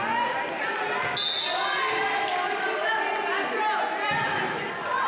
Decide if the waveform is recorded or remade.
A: recorded